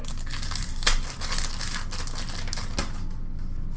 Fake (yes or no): no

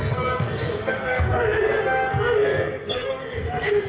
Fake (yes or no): yes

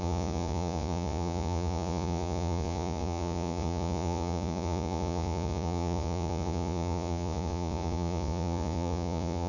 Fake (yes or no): yes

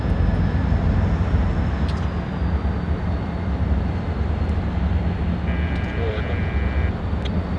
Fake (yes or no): no